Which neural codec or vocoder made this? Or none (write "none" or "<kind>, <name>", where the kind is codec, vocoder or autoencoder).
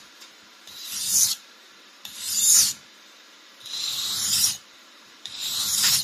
vocoder, BigVGAN v2